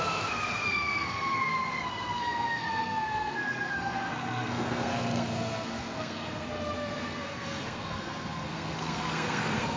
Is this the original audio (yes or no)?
no